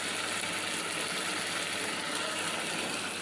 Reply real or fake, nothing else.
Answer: real